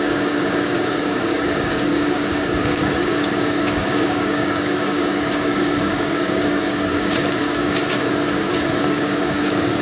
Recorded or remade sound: remade